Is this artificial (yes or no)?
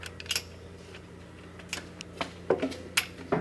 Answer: no